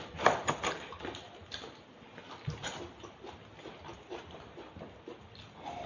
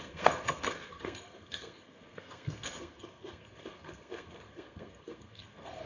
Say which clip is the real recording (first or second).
first